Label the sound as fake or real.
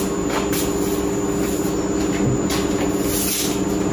real